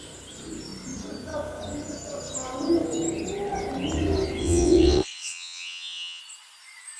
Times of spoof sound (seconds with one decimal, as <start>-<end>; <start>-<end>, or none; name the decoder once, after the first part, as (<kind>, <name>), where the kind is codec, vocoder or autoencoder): 4.4-6.2 (vocoder, WaveNeXt)